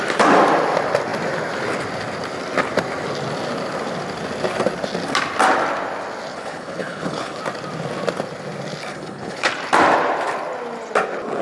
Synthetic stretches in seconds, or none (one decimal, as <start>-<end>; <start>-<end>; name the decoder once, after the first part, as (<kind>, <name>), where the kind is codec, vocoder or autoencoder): 6.3-7.4 (codec, HILCodec); 8.9-9.5